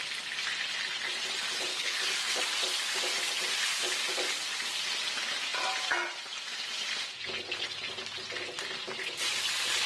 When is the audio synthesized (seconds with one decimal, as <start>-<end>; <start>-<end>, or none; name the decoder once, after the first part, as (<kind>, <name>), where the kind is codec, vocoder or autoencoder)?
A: 1.7-2.4 (codec, HILCodec)